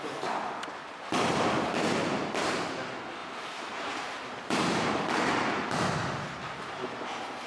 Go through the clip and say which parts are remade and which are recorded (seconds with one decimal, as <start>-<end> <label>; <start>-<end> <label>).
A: 0.0-3.2 recorded; 3.2-5.0 remade; 5.0-7.5 recorded